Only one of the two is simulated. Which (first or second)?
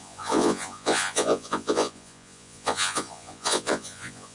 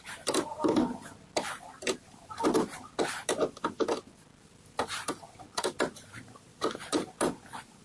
first